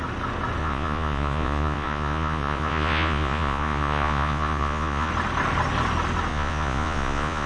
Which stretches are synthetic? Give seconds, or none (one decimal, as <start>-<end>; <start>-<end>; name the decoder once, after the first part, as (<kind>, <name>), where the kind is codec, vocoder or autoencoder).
0.6-5.1 (vocoder, Vocos); 6.3-7.5